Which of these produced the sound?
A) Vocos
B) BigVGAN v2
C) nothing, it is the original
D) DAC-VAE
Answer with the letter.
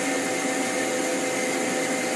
C